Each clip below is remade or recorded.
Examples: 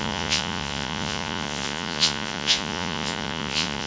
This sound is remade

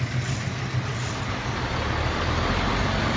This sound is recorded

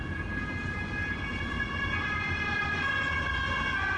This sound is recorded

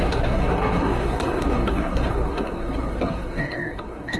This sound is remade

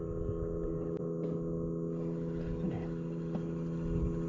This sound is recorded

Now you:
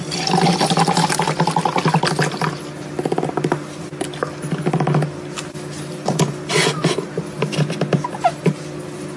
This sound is recorded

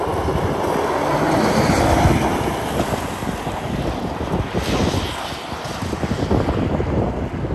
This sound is recorded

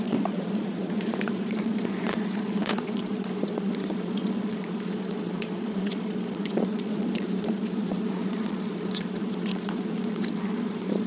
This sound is remade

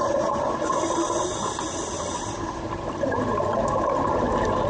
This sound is recorded